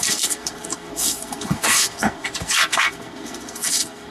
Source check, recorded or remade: remade